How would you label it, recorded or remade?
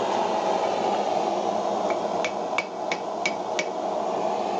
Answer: recorded